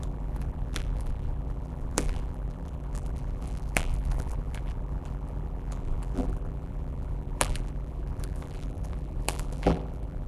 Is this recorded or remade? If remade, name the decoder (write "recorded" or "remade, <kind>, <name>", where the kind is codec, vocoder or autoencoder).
remade, vocoder, BigVGAN v2